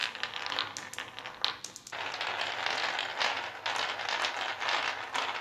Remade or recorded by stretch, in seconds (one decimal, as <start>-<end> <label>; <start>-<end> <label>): 0.0-5.4 recorded

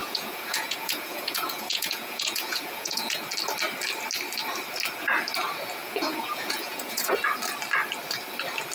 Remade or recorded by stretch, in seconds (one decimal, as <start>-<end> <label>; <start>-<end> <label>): 0.0-3.2 remade; 3.2-5.8 recorded; 5.8-7.2 remade; 7.2-8.7 recorded

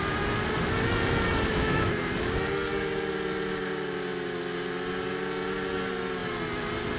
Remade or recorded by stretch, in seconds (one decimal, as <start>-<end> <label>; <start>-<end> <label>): 0.0-1.5 recorded; 1.5-2.1 remade; 2.1-7.0 recorded

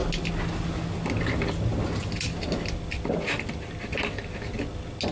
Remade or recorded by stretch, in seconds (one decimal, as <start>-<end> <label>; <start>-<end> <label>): 0.0-5.1 recorded